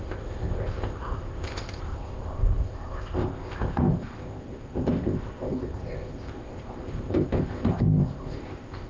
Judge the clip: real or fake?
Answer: fake